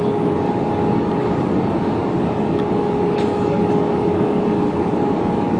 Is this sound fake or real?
fake